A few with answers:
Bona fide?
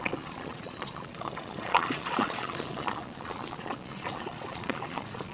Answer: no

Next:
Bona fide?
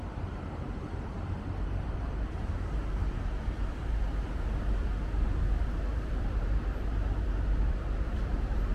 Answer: no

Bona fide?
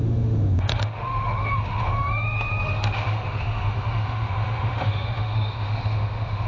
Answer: no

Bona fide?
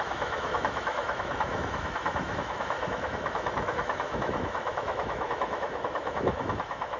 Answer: no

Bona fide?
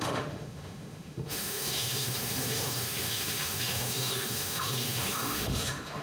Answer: no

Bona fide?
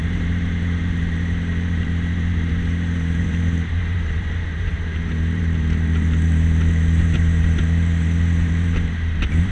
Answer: no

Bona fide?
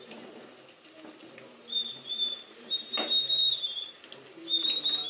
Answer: no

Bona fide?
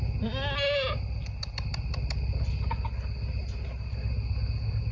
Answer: yes